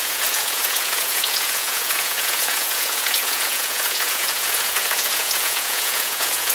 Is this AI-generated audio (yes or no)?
yes